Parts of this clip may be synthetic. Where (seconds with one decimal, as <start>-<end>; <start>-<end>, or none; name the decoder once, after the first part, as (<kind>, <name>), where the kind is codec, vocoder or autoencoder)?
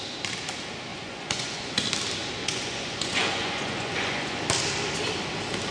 0.9-1.8 (vocoder, Vocos); 2.4-4.4